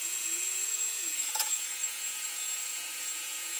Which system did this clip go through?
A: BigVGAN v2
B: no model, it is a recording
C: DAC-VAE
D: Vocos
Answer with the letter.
D